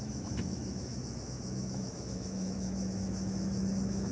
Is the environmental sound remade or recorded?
remade